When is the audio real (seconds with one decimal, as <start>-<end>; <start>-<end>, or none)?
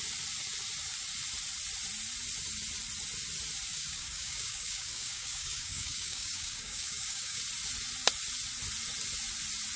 0.0-3.7; 7.4-9.8